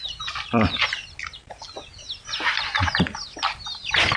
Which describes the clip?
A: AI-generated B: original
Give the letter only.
B